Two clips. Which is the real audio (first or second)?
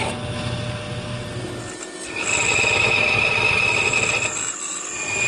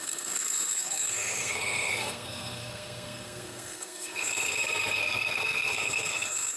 first